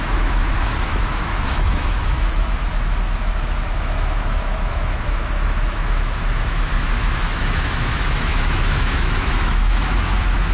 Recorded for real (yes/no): no